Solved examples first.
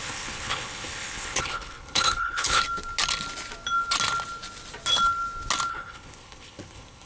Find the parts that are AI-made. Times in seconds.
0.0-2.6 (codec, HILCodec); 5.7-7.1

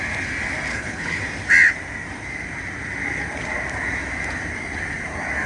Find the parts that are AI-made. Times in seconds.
0.7-1.2 (codec, HILCodec)

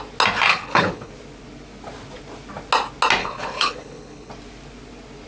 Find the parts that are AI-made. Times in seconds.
0.5-1.1 (codec, HILCodec); 3.2-4.3

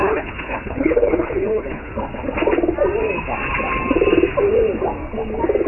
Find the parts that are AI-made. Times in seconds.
0.0-1.9 (codec, HILCodec)

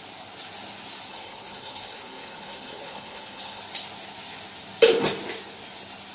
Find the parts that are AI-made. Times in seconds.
1.1-3.6 (codec, HILCodec)

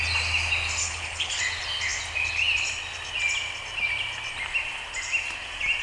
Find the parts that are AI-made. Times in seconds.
0.8-1.4 (codec, HILCodec)